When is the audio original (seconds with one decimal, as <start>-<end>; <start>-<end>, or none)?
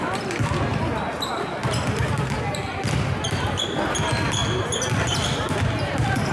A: 0.0-6.3